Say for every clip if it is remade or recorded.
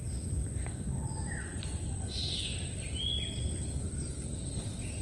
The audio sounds recorded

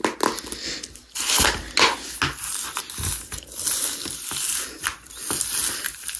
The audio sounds recorded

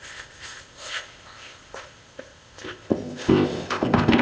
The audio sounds remade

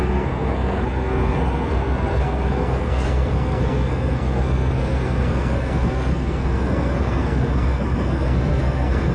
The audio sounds remade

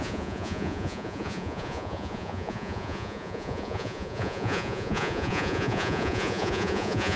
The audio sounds remade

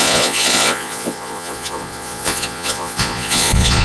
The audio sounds remade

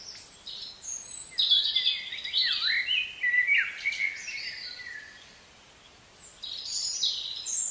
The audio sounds recorded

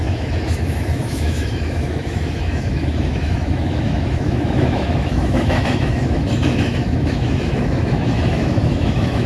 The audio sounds remade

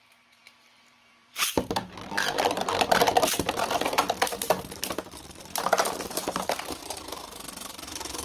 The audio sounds remade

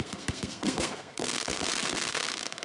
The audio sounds remade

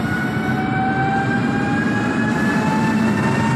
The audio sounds recorded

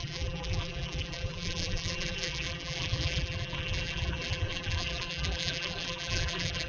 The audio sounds remade